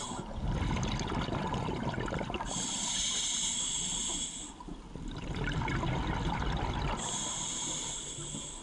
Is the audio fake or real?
real